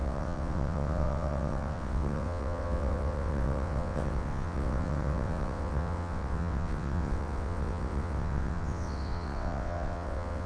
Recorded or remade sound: remade